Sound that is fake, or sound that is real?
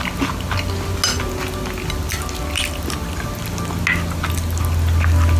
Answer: real